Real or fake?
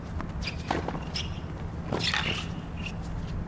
real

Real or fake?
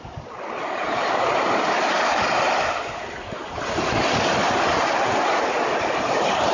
real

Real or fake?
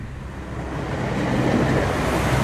real